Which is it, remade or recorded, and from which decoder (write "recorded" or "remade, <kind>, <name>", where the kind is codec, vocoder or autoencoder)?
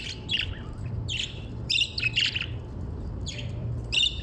remade, vocoder, BigVGAN v2